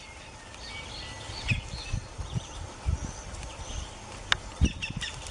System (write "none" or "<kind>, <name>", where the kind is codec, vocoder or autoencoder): none